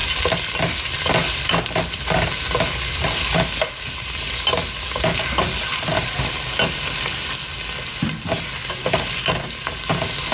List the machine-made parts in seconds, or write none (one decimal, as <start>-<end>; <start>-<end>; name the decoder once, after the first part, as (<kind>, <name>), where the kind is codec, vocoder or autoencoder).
8.6-9.5 (vocoder, BigVGAN v2)